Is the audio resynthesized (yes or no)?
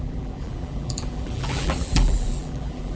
yes